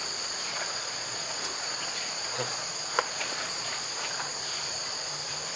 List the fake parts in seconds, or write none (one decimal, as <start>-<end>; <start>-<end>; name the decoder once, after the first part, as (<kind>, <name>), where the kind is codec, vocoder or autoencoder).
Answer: 0.5-3.9 (vocoder, Vocos)